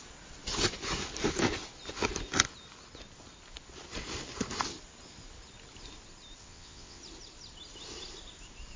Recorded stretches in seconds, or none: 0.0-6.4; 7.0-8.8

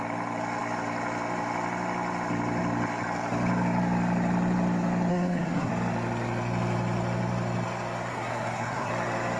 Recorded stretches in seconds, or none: 0.0-5.1; 5.7-8.1; 8.9-9.4

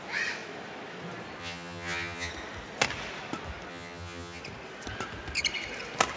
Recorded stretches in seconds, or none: 0.0-1.4; 2.3-3.7; 4.4-6.2

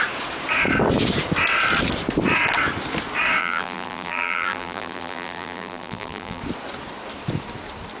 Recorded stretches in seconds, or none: 0.0-3.4; 6.4-8.0

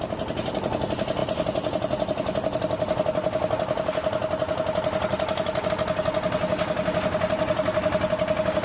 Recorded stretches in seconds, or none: 0.0-8.6

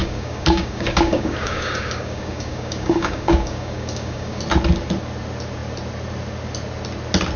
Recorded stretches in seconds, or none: 4.4-7.4

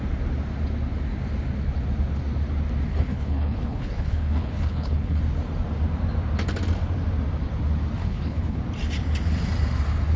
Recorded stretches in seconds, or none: 0.0-2.9; 5.2-8.0; 8.6-10.2

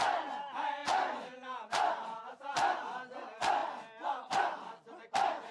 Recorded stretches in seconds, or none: 0.0-5.5